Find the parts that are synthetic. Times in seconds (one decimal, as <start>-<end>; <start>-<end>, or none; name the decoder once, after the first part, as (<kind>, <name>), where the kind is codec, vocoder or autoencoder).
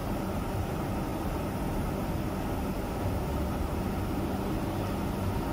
none